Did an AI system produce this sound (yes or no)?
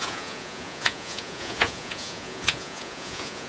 yes